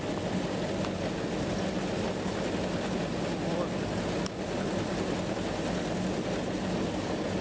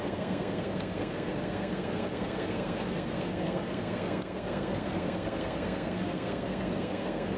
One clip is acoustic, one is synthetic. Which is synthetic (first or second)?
second